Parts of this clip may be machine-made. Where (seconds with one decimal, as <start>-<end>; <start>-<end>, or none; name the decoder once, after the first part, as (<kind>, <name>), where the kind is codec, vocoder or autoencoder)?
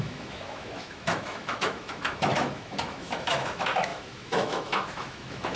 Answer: 0.0-5.6 (autoencoder, DAC-VAE)